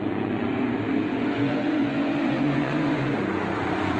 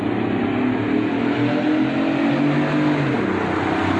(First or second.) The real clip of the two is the second